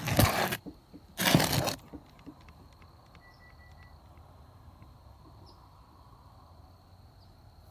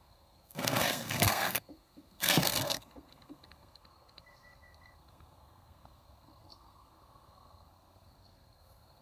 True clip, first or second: first